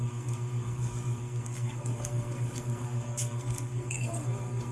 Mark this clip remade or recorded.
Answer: remade